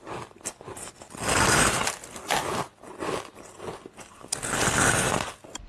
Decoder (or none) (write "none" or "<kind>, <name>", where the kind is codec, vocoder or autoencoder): none